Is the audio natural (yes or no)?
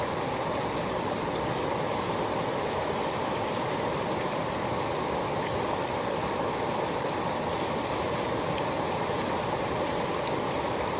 yes